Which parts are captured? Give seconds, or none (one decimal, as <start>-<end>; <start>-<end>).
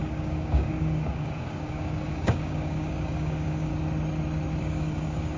3.7-4.6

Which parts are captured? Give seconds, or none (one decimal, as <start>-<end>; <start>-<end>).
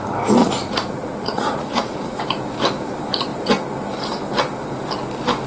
0.0-0.4; 2.2-5.5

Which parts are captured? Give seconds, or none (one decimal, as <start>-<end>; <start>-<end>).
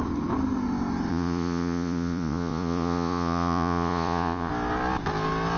0.0-1.1; 4.5-5.6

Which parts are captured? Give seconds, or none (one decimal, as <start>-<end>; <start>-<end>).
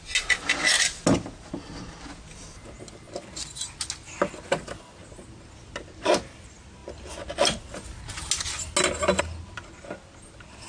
0.0-10.7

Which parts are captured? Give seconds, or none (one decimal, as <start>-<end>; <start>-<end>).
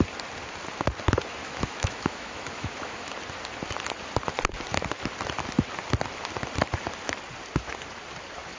0.0-1.4; 3.1-8.6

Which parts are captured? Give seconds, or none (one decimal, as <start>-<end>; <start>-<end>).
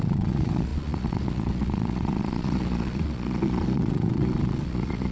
none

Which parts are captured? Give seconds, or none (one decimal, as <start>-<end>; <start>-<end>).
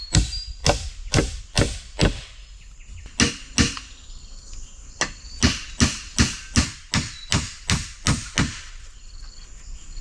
0.0-10.0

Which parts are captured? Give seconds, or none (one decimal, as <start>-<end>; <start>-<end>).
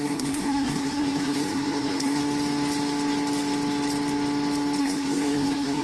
2.2-4.8